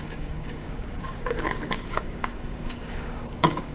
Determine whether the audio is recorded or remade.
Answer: remade